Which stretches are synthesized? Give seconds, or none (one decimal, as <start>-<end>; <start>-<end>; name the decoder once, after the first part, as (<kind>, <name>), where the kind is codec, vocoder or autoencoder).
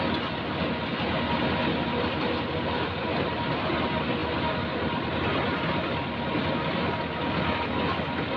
none